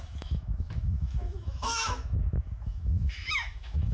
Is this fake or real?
fake